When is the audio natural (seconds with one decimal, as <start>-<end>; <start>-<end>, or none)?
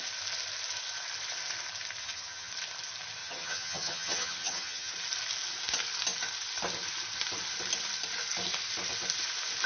0.0-2.0; 2.5-3.2; 4.9-9.7